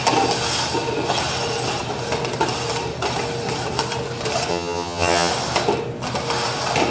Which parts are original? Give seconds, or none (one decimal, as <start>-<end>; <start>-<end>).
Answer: 0.0-4.5; 5.3-6.9